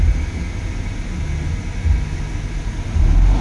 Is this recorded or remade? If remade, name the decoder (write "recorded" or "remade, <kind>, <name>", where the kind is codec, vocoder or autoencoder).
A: recorded